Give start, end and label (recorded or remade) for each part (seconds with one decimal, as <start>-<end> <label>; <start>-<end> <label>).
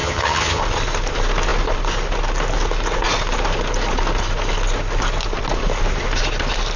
0.0-0.6 remade; 0.6-6.8 recorded